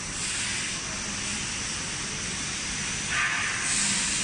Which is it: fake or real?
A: real